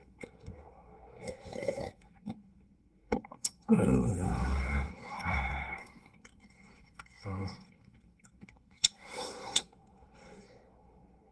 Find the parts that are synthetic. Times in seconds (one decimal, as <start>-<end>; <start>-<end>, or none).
0.0-11.3